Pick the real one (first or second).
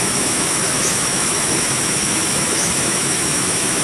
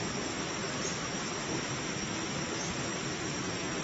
second